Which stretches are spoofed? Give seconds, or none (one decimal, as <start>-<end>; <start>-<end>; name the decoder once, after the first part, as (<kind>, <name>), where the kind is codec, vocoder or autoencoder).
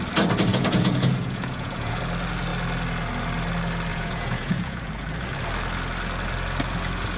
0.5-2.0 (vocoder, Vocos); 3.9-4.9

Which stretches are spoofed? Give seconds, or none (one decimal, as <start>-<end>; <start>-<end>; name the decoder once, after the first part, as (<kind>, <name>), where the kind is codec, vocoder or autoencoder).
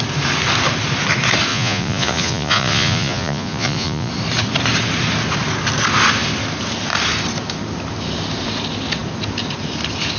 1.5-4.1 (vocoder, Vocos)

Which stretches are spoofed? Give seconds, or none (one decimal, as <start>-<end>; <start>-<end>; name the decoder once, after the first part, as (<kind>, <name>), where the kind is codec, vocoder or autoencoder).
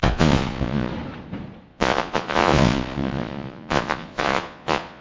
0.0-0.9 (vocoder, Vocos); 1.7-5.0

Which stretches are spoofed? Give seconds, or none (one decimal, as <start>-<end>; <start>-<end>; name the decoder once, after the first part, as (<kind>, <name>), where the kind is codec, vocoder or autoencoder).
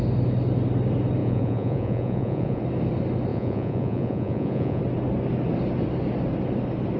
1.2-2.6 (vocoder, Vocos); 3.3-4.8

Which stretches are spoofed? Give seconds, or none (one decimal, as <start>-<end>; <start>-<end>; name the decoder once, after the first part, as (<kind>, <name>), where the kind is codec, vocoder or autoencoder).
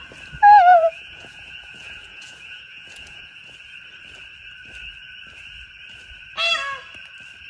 0.7-3.4 (vocoder, Vocos)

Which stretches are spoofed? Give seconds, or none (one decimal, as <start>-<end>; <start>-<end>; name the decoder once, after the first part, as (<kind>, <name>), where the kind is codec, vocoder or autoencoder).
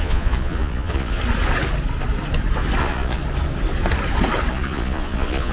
0.0-1.2 (vocoder, Vocos); 2.8-3.2; 4.5-5.5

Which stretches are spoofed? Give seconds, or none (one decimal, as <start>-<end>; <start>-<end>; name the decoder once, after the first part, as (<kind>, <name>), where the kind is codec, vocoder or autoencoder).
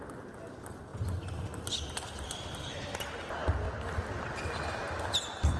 none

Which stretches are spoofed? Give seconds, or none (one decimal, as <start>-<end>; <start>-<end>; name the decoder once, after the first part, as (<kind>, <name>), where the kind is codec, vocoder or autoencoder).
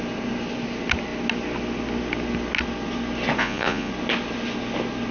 3.4-3.9 (vocoder, Vocos)